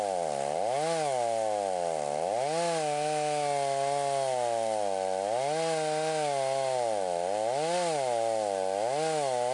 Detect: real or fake real